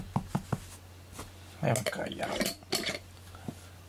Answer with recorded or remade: recorded